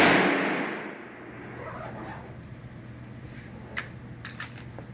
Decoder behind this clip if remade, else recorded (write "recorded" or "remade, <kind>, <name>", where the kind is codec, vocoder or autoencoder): recorded